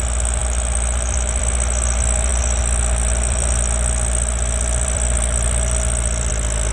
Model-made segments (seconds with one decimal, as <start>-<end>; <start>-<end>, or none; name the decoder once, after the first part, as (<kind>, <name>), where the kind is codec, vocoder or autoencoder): 0.4-1.4 (vocoder, BigVGAN v2); 2.3-6.3